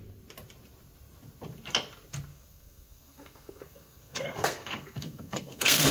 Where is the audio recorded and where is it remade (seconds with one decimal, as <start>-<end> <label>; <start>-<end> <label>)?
0.0-2.3 recorded; 2.3-5.9 remade

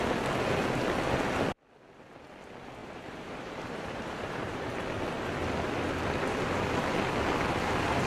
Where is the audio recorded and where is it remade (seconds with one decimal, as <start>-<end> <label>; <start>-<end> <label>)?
0.0-2.8 recorded; 2.8-4.7 remade; 4.7-8.1 recorded

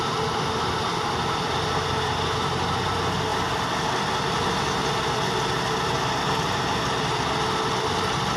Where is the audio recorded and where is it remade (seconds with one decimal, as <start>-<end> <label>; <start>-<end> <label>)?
0.0-8.4 recorded

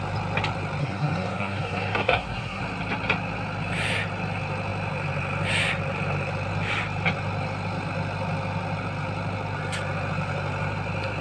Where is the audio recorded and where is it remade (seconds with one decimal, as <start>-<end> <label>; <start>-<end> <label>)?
0.0-0.8 recorded; 0.8-2.6 remade; 2.6-11.2 recorded

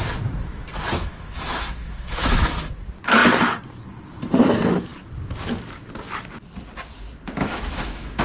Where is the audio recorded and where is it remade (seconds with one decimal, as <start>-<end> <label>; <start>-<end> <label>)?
0.0-1.0 recorded; 1.0-2.7 remade; 2.7-7.4 recorded; 7.4-8.2 remade

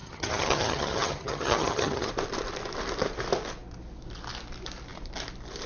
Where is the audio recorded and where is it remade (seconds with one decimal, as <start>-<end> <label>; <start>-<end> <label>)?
0.0-2.1 remade; 2.1-5.7 recorded

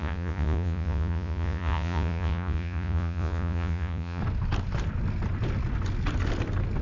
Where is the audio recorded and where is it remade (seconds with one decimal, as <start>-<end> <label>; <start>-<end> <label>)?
0.0-4.2 remade; 4.2-6.8 recorded